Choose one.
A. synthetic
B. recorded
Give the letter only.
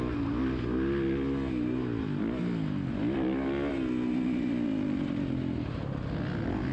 B